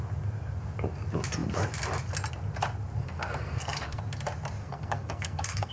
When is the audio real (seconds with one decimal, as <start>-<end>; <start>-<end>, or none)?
0.0-3.0; 4.0-4.6